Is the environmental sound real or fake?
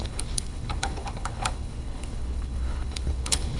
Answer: fake